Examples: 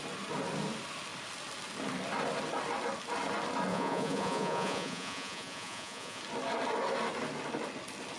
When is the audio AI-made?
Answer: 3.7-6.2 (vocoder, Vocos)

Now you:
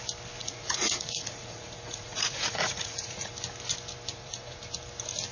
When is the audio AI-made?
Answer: 0.4-3.3 (vocoder, Vocos); 4.1-4.6